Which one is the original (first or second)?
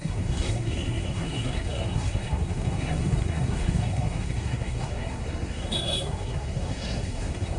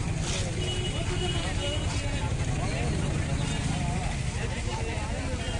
second